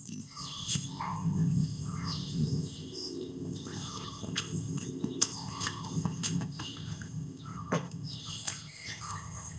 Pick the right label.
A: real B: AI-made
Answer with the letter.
B